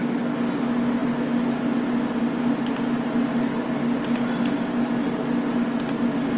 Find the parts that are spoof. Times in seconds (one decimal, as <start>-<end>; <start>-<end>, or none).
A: none